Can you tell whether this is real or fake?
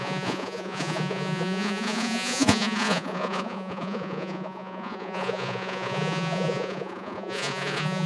fake